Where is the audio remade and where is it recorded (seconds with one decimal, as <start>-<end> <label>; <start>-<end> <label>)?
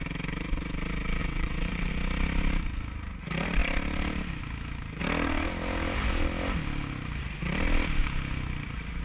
0.0-1.2 recorded; 1.2-1.9 remade; 1.9-9.0 recorded